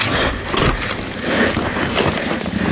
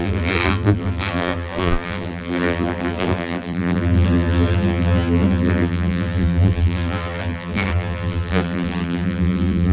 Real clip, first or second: first